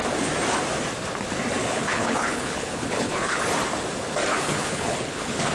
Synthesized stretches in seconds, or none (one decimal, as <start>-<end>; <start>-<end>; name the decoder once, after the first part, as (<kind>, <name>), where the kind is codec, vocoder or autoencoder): 1.6-3.4 (codec, HILCodec); 4.3-5.5